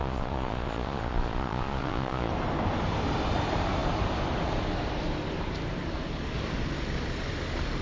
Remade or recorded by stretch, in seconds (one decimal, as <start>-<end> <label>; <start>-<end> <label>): 0.0-2.3 remade; 2.3-7.8 recorded